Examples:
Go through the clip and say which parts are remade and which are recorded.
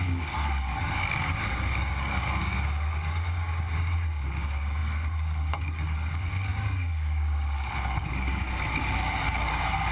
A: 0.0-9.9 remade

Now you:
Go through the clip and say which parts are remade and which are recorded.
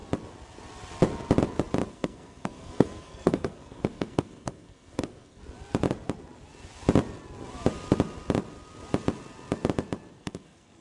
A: 0.0-1.9 recorded; 1.9-5.4 remade; 5.4-10.1 recorded; 10.1-10.8 remade